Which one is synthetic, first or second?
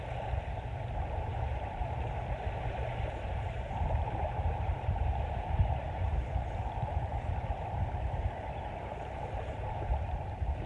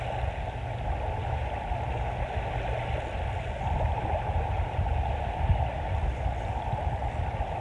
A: first